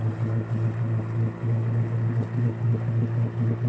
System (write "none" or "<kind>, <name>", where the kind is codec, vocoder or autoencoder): none